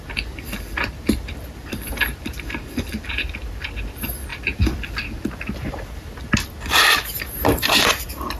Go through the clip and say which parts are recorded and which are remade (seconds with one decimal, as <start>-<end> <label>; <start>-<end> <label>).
0.0-1.6 recorded; 1.6-2.9 remade; 2.9-4.3 recorded; 4.3-5.7 remade; 5.7-8.4 recorded